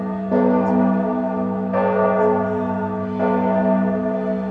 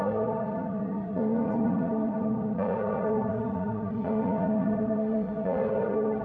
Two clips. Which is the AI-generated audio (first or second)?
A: second